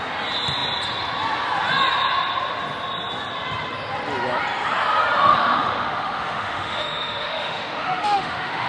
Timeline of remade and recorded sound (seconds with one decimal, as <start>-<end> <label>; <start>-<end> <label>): 0.0-5.3 recorded; 5.3-8.7 remade